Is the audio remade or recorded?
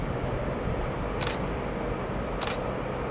recorded